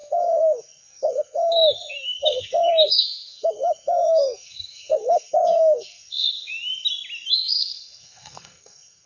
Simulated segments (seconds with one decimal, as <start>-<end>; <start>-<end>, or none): 0.0-6.5; 7.3-9.1